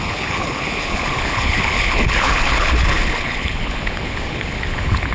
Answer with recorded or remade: remade